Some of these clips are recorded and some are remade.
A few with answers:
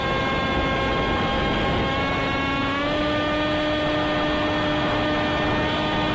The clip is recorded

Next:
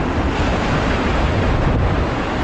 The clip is recorded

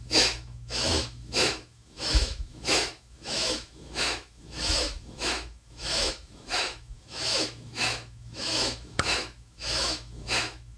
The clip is remade